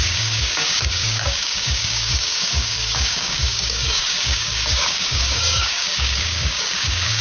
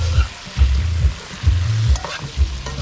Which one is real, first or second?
second